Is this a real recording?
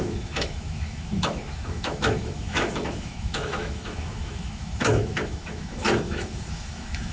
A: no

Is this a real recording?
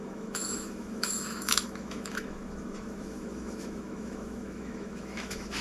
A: no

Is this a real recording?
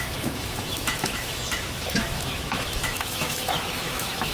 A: no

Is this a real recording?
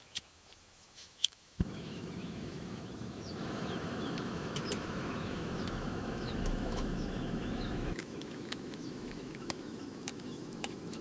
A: no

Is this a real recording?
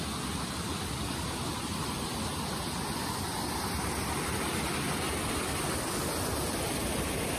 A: yes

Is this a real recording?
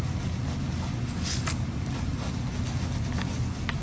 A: yes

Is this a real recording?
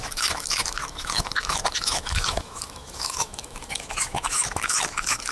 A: no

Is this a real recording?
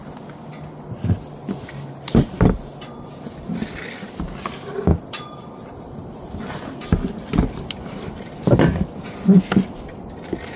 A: yes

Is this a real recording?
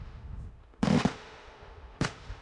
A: no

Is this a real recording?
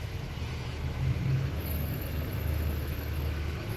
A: no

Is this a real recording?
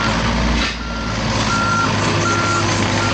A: yes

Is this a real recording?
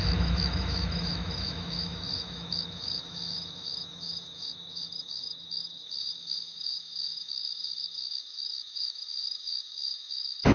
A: no